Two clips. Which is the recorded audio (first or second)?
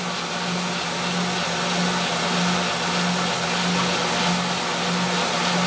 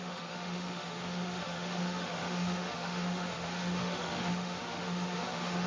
first